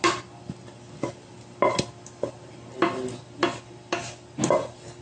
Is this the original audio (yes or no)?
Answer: yes